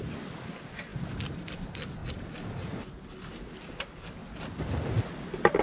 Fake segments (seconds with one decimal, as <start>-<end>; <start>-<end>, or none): none